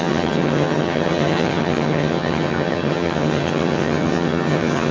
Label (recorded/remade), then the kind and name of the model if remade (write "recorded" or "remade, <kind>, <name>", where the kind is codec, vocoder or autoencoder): remade, vocoder, HiFi-GAN